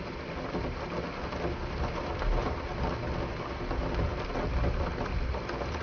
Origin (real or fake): real